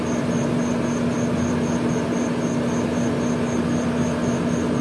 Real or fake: real